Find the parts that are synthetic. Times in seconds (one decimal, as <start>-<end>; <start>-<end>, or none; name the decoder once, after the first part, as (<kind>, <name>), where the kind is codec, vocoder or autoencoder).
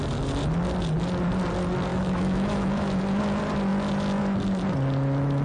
1.9-3.2 (autoencoder, DAC-VAE)